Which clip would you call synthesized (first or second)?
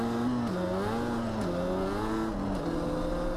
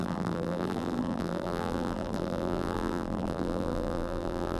second